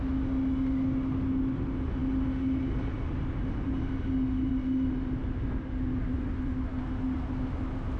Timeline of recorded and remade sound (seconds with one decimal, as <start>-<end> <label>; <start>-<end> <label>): 0.0-8.0 recorded